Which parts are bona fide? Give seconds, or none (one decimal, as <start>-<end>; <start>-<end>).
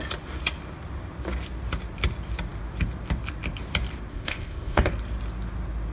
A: 0.0-4.1; 4.9-5.9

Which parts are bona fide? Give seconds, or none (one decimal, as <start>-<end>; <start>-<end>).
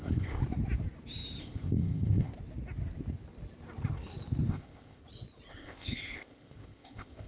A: 0.4-1.4; 2.3-4.5; 5.0-5.5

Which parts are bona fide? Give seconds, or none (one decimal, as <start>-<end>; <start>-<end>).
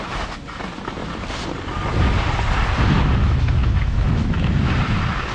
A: 0.0-3.6; 4.5-5.3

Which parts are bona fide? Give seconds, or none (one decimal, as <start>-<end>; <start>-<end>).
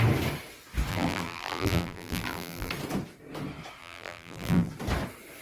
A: 0.0-0.9; 2.7-3.8; 4.7-5.4